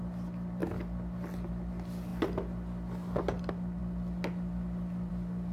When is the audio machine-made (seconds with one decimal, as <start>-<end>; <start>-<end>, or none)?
none